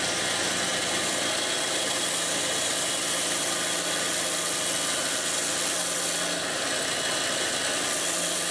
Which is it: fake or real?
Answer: real